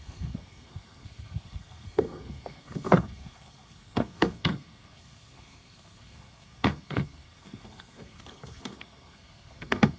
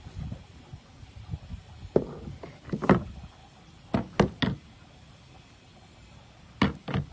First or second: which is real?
second